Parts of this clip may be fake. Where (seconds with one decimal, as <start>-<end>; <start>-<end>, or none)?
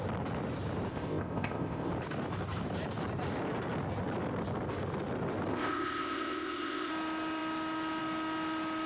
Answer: 0.9-1.9; 5.5-6.9